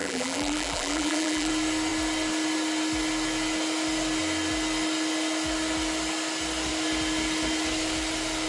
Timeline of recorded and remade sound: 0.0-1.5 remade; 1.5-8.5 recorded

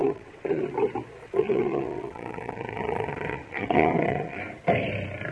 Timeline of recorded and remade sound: 0.0-0.6 remade; 0.6-1.2 recorded; 1.2-4.4 remade; 4.4-5.3 recorded

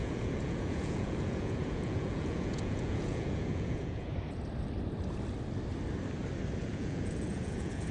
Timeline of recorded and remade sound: 0.0-4.1 remade; 4.1-6.6 recorded; 6.6-7.9 remade

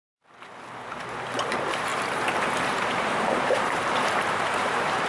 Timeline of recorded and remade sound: 0.0-1.9 recorded; 1.9-5.1 remade

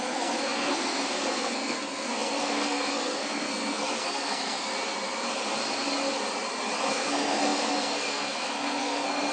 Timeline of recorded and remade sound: 0.0-4.7 remade; 4.7-6.9 recorded; 6.9-9.3 remade